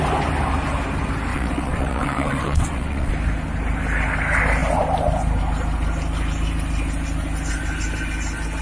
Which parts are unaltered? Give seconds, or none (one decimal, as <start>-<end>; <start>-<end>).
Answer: 0.0-1.3; 3.1-8.6